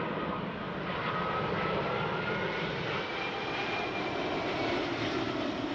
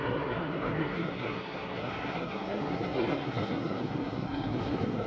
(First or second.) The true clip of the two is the first